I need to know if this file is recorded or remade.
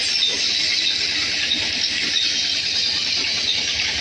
recorded